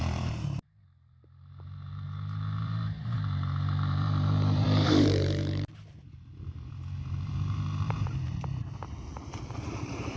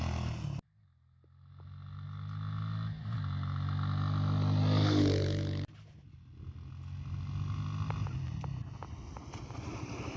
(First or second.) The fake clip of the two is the first